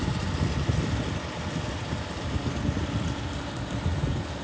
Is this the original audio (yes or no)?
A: yes